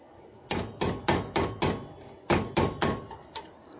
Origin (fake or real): real